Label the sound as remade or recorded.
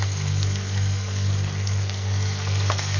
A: remade